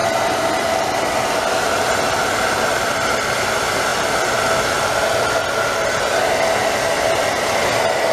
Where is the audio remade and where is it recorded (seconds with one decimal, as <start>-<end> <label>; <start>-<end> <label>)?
0.0-8.1 recorded

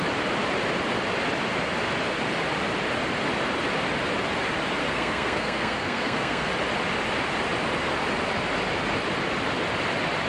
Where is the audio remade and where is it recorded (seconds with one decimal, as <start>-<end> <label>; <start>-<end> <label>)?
0.0-4.8 recorded; 4.8-6.5 remade; 6.5-10.3 recorded

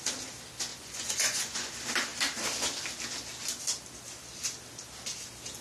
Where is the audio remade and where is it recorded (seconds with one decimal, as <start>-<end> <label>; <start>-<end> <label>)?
0.0-0.7 recorded; 0.7-1.7 remade; 1.7-5.6 recorded

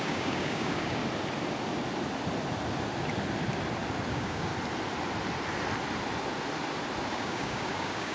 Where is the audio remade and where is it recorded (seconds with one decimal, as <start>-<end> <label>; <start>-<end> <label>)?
0.0-1.0 remade; 1.0-4.1 recorded; 4.1-4.5 remade; 4.5-7.1 recorded; 7.1-8.1 remade

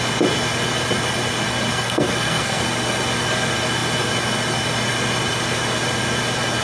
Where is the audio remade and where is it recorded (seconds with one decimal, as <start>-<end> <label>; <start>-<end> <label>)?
0.0-1.7 recorded; 1.7-2.6 remade; 2.6-6.6 recorded